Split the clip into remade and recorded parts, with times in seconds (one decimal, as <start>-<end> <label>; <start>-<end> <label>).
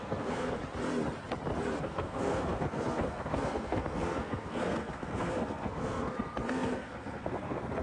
0.0-0.6 remade; 0.6-1.8 recorded; 1.8-7.8 remade